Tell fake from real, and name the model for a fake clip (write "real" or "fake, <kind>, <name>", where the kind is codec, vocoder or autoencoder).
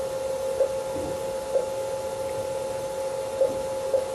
fake, vocoder, BigVGAN v2